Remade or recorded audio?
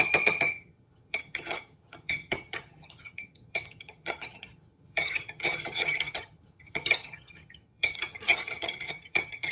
remade